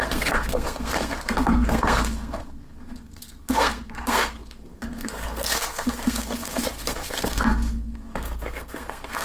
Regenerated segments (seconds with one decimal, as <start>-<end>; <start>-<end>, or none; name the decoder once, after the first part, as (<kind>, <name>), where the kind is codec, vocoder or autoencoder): 0.0-9.2 (codec, SNAC)